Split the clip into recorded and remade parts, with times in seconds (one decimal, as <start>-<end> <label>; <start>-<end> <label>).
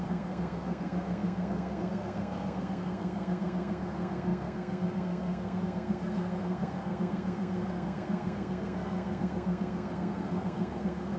0.0-11.2 remade